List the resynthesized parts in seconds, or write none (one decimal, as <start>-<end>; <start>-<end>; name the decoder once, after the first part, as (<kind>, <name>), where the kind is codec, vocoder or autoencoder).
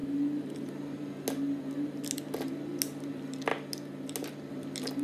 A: none